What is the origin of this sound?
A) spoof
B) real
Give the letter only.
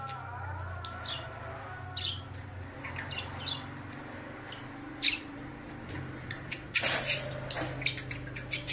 B